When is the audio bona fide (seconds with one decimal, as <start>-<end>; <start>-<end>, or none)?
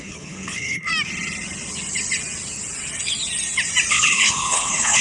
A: 0.9-3.9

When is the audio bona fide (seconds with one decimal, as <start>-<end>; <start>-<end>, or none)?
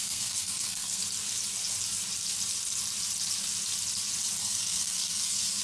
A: 1.0-4.4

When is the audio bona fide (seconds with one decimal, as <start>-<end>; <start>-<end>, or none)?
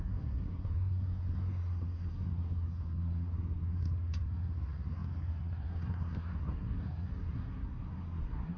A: none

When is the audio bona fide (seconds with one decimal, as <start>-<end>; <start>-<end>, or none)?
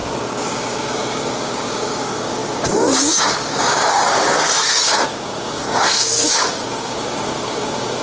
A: none